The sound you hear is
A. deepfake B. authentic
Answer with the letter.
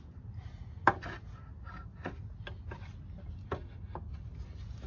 B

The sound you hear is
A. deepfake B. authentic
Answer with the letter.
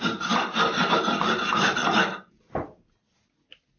B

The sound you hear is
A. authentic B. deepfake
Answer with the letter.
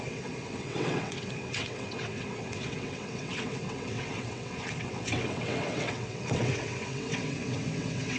B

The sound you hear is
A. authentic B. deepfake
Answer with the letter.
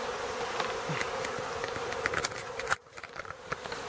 A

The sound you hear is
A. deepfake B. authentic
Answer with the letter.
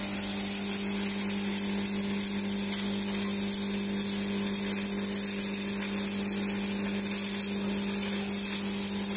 B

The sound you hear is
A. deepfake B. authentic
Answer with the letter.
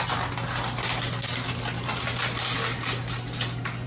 B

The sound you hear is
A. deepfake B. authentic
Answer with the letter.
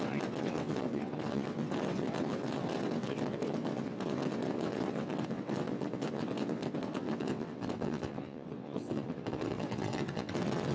A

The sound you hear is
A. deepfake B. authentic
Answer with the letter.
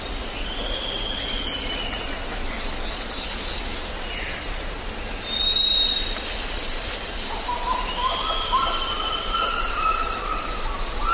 B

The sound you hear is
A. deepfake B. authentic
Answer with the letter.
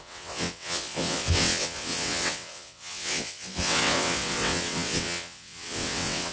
A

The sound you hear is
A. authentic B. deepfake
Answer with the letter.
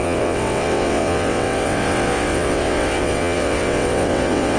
B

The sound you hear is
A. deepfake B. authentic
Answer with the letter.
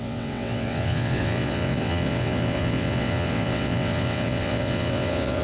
A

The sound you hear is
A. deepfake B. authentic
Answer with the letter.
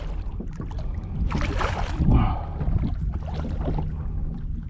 B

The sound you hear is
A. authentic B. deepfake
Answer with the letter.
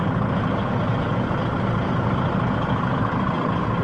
A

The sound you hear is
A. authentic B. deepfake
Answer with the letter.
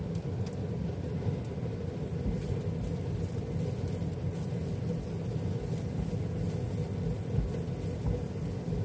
A